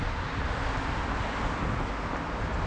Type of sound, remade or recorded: recorded